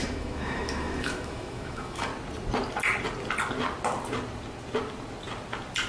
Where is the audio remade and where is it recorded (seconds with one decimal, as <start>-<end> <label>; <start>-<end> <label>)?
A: 0.0-2.1 remade; 2.1-5.9 recorded